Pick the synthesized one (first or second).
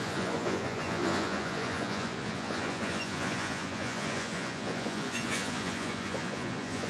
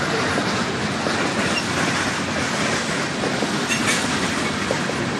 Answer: first